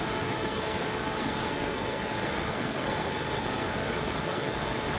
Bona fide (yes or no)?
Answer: no